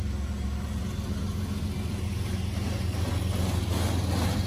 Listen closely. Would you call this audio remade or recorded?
recorded